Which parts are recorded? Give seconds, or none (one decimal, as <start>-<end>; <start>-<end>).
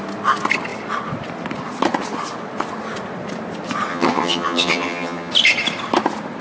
0.0-3.9; 5.3-6.4